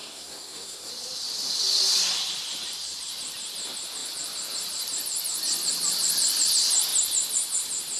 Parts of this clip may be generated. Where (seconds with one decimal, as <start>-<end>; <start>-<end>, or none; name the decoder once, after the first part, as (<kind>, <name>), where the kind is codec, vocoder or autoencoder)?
0.0-0.9 (codec, SNAC)

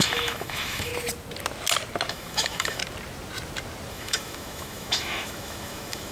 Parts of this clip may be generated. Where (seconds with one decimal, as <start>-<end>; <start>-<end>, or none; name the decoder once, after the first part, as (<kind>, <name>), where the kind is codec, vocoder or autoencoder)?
0.0-0.9 (autoencoder, DAC-VAE); 2.1-2.8; 3.9-6.1

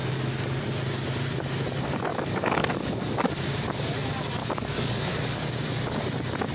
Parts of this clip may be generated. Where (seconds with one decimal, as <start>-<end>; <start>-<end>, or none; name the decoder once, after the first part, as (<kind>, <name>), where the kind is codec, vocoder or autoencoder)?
0.0-0.6 (codec, DAC); 2.1-3.3; 4.4-5.5

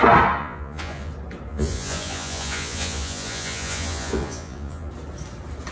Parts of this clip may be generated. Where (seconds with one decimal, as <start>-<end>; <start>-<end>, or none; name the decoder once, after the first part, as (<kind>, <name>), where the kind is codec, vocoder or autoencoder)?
0.4-1.1 (vocoder, Vocos); 1.5-4.9

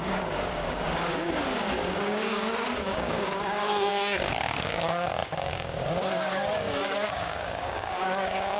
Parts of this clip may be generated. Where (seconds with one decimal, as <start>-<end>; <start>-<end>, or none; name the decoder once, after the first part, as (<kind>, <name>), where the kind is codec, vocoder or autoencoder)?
0.0-8.6 (codec, DAC)

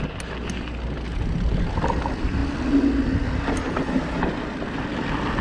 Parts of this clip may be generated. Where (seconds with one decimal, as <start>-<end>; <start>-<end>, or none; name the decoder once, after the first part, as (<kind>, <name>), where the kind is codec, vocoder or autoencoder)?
1.1-1.7 (vocoder, BigVGAN v2)

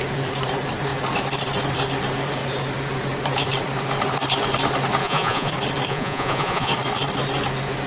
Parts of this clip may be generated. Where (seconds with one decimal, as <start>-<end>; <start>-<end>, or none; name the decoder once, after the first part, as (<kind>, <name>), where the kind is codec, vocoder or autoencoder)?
5.0-5.5 (vocoder, Vocos); 5.9-6.7